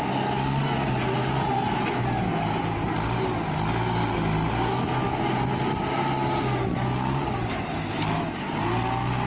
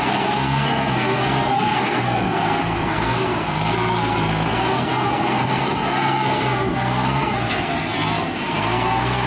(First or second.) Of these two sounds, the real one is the first